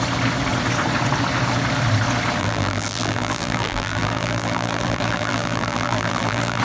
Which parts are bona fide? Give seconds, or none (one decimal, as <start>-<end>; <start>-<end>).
0.0-2.4